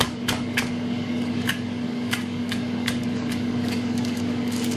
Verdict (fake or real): fake